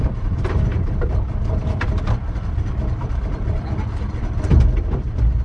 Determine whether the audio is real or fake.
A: fake